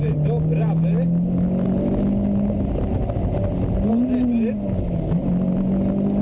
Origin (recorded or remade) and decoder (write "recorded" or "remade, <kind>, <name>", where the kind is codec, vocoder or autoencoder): recorded